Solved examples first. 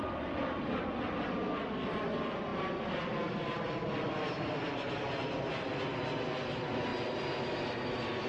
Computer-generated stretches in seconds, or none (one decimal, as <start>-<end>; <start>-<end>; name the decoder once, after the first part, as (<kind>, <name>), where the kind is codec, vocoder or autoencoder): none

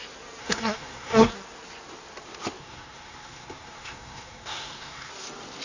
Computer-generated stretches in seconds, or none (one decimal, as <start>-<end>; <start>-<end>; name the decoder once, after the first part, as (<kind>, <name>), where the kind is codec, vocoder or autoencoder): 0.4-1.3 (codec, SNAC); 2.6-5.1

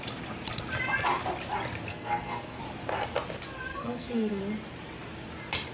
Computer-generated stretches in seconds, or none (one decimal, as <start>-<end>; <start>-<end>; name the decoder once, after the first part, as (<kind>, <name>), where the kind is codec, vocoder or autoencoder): 1.9-2.6 (codec, SNAC); 3.7-4.4

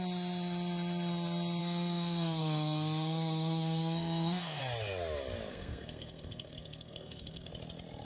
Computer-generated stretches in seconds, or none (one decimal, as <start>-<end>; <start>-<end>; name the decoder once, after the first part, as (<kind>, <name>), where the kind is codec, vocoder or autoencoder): 1.6-4.6 (codec, SNAC); 5.5-7.5

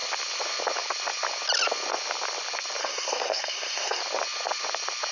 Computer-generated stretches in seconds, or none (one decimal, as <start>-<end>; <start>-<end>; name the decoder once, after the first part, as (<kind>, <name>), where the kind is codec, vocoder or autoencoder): 2.8-4.0 (codec, SNAC)

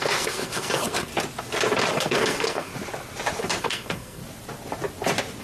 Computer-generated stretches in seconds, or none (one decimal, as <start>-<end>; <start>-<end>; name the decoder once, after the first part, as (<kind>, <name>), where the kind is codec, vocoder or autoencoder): 0.0-1.1 (codec, SNAC); 1.9-2.7; 3.6-4.2

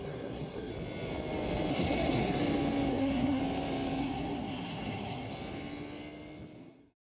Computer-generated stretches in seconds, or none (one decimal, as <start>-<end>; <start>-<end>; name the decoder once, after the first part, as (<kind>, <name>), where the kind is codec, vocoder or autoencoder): 0.0-0.7 (codec, SNAC); 1.7-2.4; 2.9-3.4; 4.0-5.3; 6.6-7.1

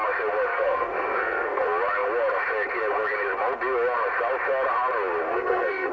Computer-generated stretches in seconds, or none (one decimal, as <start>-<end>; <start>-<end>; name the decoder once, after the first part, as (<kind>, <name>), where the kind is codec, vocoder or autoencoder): 0.5-1.6 (codec, SNAC); 5.3-5.9